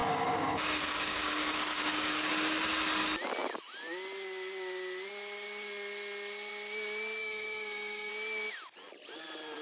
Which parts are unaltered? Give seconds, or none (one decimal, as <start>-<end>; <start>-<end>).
2.3-7.2; 8.1-9.6